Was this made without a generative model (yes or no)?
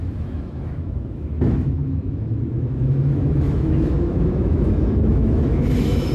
no